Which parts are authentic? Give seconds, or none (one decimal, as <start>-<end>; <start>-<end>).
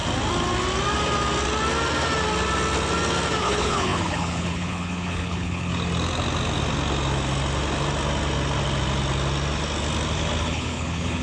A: 0.0-3.4; 5.7-10.4